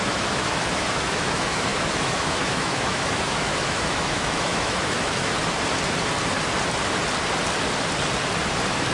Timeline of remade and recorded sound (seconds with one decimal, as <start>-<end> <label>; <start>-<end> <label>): 0.0-5.3 remade; 5.3-8.9 recorded